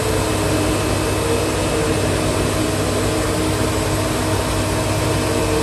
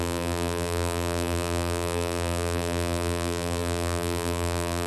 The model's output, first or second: second